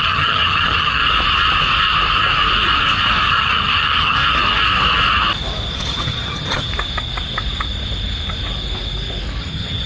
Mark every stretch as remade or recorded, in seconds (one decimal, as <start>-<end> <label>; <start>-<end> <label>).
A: 0.0-1.0 remade; 1.0-3.3 recorded; 3.3-4.2 remade; 4.2-5.7 recorded; 5.7-6.7 remade; 6.7-9.4 recorded; 9.4-9.9 remade